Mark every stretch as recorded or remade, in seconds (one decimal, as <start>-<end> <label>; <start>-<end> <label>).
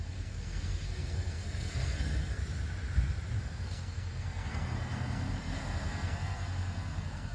0.0-2.4 remade; 2.4-3.4 recorded; 3.4-7.3 remade